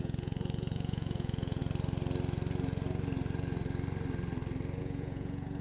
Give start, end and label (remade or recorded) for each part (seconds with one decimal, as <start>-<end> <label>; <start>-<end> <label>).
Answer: 0.0-1.6 remade; 1.6-4.8 recorded; 4.8-5.6 remade